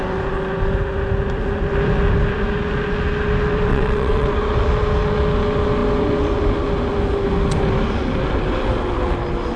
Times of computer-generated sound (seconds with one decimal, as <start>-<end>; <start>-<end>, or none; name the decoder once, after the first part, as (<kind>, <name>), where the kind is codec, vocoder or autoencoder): 3.7-4.3 (vocoder, WaveNeXt)